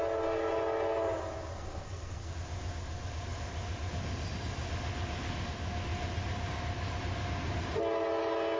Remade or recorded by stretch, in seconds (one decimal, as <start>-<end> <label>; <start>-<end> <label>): 0.0-1.5 recorded; 1.5-2.3 remade; 2.3-8.6 recorded